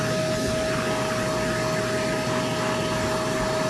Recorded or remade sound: recorded